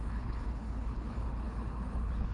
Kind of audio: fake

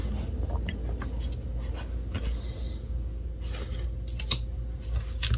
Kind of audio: real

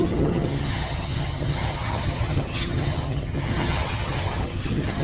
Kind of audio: fake